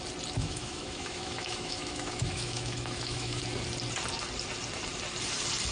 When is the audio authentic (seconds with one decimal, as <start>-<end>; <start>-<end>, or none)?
0.0-0.4; 3.4-5.7

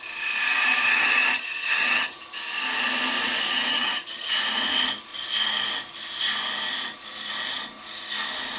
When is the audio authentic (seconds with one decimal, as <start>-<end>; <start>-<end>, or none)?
0.0-0.9; 2.2-3.7; 4.3-8.6

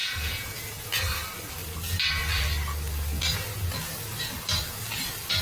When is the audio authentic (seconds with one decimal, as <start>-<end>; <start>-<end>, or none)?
0.6-5.4